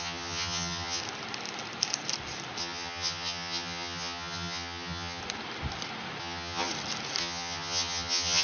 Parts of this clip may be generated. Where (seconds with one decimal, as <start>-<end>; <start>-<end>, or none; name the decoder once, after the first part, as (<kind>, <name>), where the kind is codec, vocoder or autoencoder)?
0.0-1.0 (vocoder, HiFi-GAN); 2.6-5.2; 6.2-6.7; 7.2-8.4

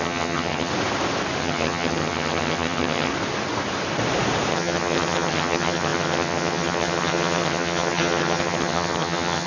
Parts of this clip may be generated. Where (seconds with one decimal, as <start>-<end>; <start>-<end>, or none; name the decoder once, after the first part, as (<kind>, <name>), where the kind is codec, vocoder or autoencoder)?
0.0-0.7 (vocoder, HiFi-GAN); 1.4-3.1; 4.5-9.5

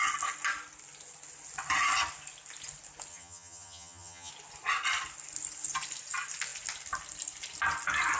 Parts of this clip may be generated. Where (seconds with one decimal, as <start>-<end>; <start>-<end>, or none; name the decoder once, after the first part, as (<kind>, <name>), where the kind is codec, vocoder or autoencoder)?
3.1-4.3 (vocoder, HiFi-GAN)